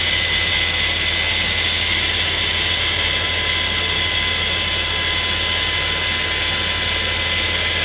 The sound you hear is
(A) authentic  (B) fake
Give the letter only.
A